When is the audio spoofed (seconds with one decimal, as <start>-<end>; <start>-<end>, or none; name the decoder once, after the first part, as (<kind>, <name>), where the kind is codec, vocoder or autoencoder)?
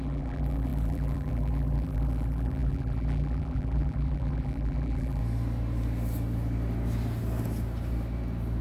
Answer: 0.0-5.2 (vocoder, BigVGAN v2)